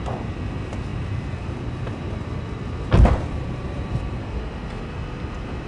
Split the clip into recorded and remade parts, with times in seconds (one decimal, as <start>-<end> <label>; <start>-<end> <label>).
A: 0.0-0.9 recorded; 0.9-4.3 remade; 4.3-5.7 recorded

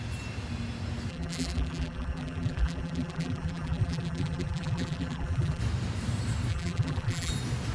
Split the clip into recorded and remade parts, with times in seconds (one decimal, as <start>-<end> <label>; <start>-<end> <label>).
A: 0.0-1.1 recorded; 1.1-5.6 remade; 5.6-6.5 recorded; 6.5-7.3 remade; 7.3-7.7 recorded

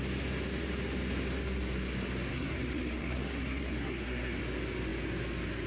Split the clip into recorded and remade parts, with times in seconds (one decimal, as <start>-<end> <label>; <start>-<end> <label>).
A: 0.0-2.3 recorded; 2.3-4.4 remade; 4.4-5.7 recorded

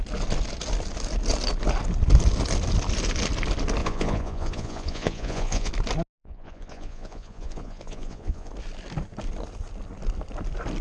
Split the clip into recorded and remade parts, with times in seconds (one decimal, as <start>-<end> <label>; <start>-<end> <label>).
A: 0.0-3.8 recorded; 3.8-5.7 remade; 5.7-6.2 recorded; 6.2-8.5 remade; 8.5-10.8 recorded

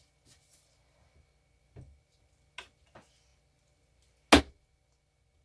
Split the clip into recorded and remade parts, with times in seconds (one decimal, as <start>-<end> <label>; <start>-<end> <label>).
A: 0.0-5.4 recorded

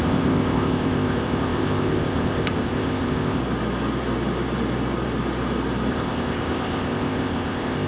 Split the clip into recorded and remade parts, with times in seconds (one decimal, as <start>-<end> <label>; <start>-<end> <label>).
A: 0.0-3.4 remade; 3.4-5.9 recorded; 5.9-7.9 remade

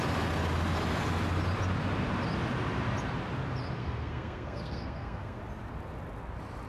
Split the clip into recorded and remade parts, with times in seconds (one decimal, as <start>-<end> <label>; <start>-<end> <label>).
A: 0.0-3.8 recorded; 3.8-5.4 remade; 5.4-6.7 recorded

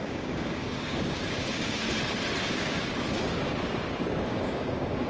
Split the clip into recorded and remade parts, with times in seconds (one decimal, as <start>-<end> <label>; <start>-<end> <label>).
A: 0.0-1.8 remade; 1.8-2.4 recorded; 2.4-5.1 remade